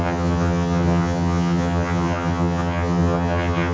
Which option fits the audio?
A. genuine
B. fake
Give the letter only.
B